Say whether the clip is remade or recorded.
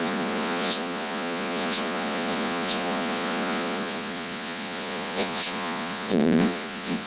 remade